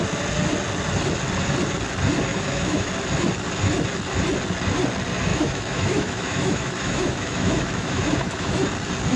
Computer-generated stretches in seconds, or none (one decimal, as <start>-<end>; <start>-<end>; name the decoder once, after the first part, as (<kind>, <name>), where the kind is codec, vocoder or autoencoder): 2.3-2.9 (autoencoder, DAC-VAE); 5.3-8.5